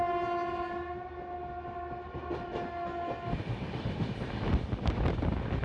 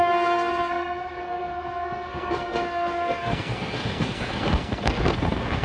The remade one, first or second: second